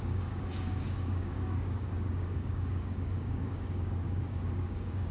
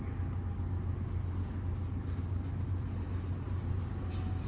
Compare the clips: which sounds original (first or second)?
second